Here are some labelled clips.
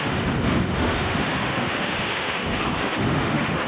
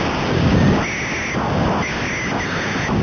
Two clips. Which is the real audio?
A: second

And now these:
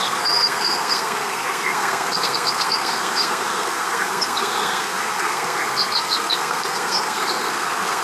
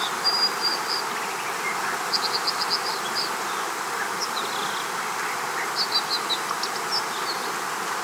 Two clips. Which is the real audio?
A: second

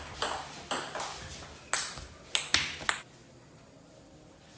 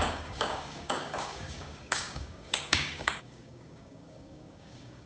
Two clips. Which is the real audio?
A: first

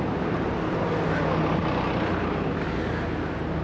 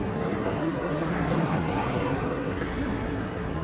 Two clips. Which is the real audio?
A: first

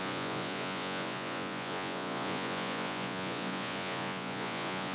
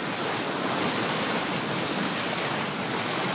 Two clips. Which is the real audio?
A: second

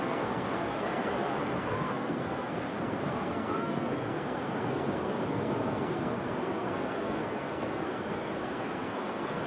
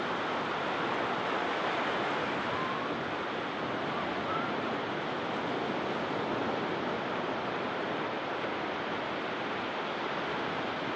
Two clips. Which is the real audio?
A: second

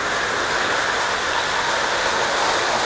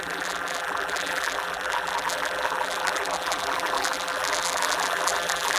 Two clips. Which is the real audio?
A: first